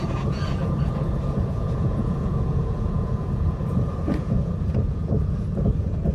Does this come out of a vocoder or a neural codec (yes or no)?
yes